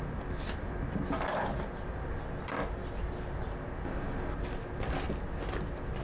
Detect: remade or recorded recorded